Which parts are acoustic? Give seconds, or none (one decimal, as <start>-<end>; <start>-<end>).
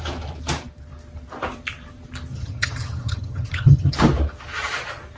0.0-2.3; 3.9-5.2